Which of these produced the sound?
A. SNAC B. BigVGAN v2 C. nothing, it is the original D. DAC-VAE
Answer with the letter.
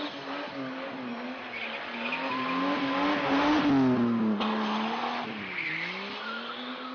C